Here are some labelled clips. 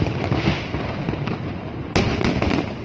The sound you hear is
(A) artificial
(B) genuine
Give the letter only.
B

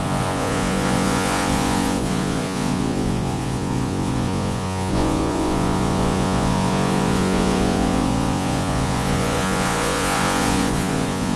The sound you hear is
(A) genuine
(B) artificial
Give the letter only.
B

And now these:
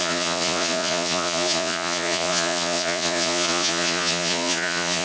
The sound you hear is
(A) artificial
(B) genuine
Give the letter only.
A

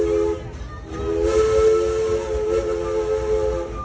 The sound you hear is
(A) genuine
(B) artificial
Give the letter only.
A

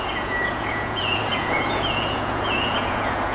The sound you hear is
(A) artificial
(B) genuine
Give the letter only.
A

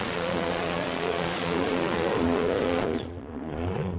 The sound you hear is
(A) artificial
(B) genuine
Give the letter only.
A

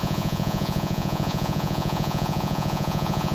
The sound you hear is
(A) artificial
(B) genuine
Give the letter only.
A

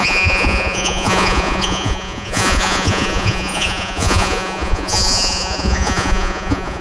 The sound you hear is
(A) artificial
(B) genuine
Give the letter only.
A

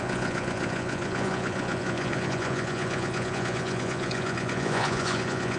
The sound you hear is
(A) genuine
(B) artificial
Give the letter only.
B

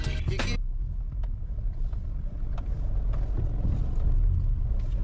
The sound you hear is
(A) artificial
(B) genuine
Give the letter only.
B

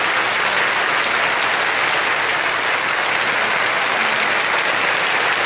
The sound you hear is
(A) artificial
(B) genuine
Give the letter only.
B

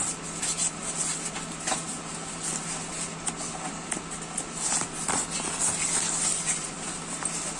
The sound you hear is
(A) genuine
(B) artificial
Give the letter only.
A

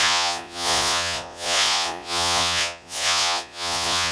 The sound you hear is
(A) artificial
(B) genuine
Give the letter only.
A